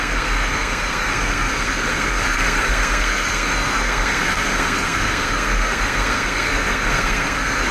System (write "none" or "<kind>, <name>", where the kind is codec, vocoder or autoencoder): codec, SNAC